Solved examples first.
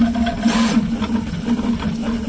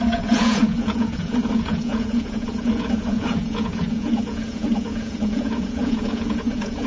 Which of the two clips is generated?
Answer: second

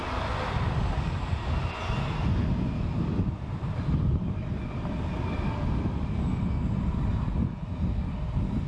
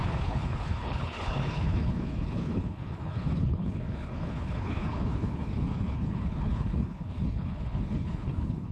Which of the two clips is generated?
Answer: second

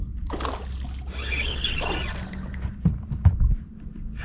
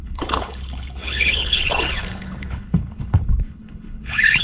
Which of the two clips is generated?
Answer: second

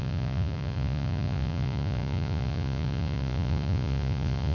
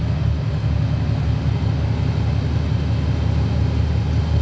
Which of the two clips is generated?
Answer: first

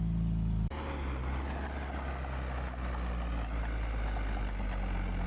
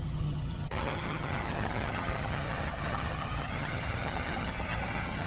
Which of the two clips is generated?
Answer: second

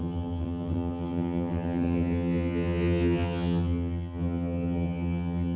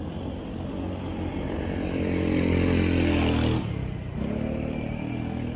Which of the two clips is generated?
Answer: first